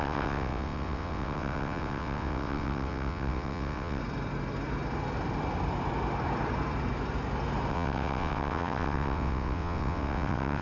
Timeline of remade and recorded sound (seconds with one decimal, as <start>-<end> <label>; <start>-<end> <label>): 0.0-4.0 remade; 4.0-7.7 recorded; 7.7-10.6 remade